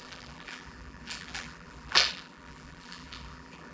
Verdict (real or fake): fake